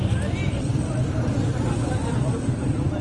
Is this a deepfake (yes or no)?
no